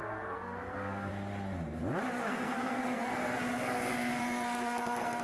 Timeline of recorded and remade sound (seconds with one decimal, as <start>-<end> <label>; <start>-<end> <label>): 0.0-1.1 remade; 1.1-2.3 recorded; 2.3-5.2 remade